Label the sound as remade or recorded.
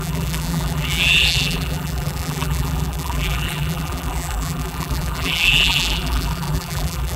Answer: remade